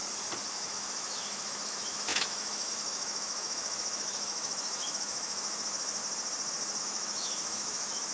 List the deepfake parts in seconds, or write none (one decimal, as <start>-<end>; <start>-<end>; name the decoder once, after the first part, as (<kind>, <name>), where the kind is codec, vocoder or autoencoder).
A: 0.5-6.0 (autoencoder, DAC-VAE); 6.8-8.1